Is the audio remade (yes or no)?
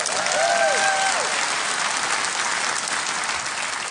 no